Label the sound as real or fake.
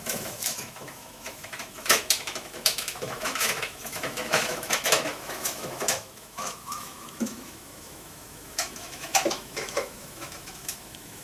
fake